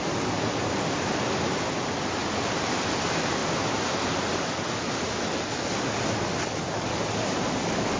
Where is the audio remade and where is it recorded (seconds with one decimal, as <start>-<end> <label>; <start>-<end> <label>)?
0.0-8.0 recorded